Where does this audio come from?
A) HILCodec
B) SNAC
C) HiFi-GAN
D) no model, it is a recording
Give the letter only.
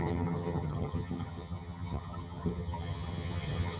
C